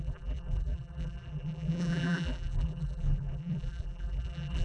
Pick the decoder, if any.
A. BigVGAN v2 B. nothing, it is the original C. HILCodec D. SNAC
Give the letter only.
A